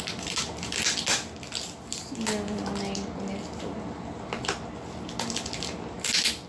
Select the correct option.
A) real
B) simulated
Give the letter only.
A